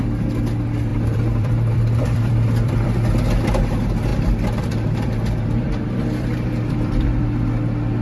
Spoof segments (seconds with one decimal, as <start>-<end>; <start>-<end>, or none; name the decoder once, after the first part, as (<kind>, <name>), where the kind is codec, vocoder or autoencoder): 0.9-3.1 (vocoder, BigVGAN v2); 4.1-7.2